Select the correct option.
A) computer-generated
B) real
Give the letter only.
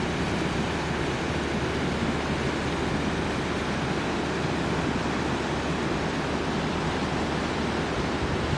B